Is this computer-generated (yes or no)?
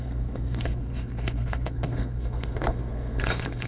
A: yes